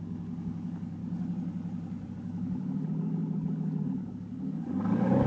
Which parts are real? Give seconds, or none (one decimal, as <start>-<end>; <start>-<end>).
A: 1.0-2.1